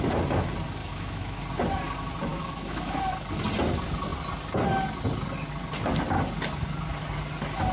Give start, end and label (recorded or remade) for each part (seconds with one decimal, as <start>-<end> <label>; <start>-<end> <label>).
0.0-0.8 recorded; 0.8-1.4 remade; 1.4-2.3 recorded; 2.3-3.0 remade; 3.0-7.7 recorded